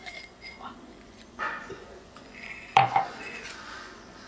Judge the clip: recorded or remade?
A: remade